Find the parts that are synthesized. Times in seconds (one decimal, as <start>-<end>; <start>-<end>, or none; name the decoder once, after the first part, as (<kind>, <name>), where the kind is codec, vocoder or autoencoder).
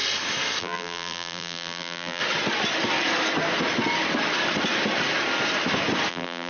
0.6-2.2 (vocoder, BigVGAN v2); 6.1-6.5